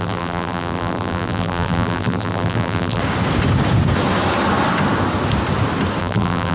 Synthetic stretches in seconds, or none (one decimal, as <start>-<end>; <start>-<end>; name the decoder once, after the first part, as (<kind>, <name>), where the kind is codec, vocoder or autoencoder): 0.0-3.0 (vocoder, BigVGAN v2); 6.0-6.5